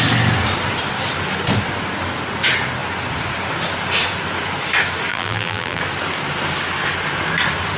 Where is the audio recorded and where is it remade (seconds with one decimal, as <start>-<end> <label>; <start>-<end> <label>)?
0.0-5.1 recorded; 5.1-5.8 remade; 5.8-7.8 recorded